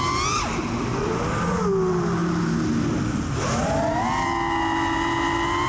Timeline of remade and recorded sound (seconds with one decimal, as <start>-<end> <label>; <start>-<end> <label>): 0.0-5.7 recorded

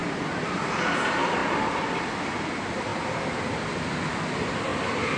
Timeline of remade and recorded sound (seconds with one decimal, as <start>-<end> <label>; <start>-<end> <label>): 0.0-0.7 remade; 0.7-1.4 recorded; 1.4-2.5 remade; 2.5-2.9 recorded; 2.9-3.6 remade; 3.6-4.7 recorded; 4.7-5.2 remade

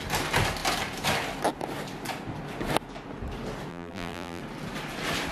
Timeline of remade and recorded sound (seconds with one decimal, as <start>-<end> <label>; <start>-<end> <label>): 0.0-3.7 recorded; 3.7-4.4 remade; 4.4-5.3 recorded